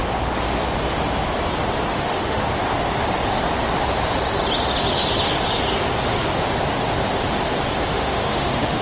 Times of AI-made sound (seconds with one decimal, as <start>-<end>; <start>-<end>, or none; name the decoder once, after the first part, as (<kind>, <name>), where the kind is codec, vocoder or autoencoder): 1.9-2.4 (autoencoder, DAC-VAE); 7.9-8.8